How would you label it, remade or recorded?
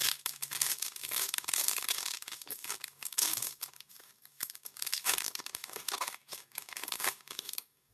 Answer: remade